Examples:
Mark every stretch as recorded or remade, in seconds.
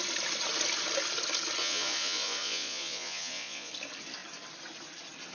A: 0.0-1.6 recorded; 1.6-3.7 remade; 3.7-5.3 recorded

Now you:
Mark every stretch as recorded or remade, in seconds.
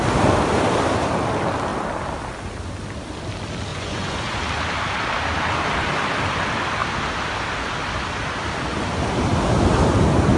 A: 0.0-3.7 recorded; 3.7-4.4 remade; 4.4-10.4 recorded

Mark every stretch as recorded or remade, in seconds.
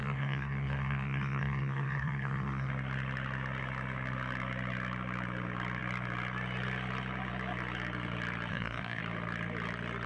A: 0.0-2.7 remade; 2.7-8.5 recorded; 8.5-9.0 remade; 9.0-10.1 recorded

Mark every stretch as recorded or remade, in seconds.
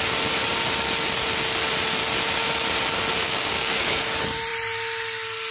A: 0.0-3.2 recorded; 3.2-4.1 remade; 4.1-5.5 recorded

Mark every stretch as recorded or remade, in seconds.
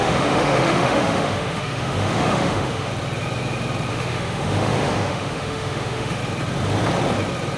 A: 0.0-2.9 remade; 2.9-3.9 recorded; 3.9-6.2 remade; 6.2-7.6 recorded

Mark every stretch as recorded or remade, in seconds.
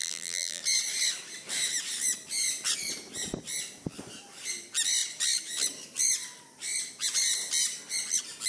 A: 0.0-0.6 remade; 0.6-8.5 recorded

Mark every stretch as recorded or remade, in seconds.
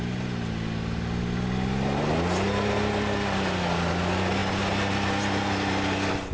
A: 0.0-6.3 recorded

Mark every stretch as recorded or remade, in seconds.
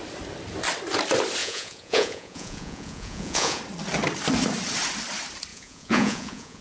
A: 0.0-1.4 recorded; 1.4-3.6 remade; 3.6-5.5 recorded; 5.5-6.6 remade